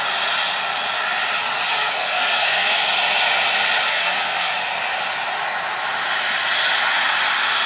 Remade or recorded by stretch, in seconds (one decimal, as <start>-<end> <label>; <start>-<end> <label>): 0.0-1.7 recorded; 1.7-2.7 remade; 2.7-3.9 recorded; 3.9-4.5 remade; 4.5-7.7 recorded